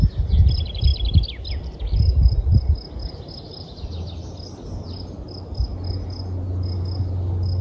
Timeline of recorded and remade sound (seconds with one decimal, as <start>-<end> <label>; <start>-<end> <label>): 0.0-7.6 recorded